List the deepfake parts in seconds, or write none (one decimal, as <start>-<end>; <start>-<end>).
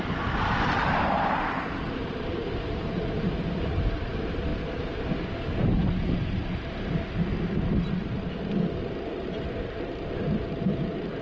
0.0-4.5; 9.0-11.2